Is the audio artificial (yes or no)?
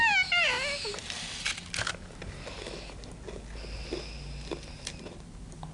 no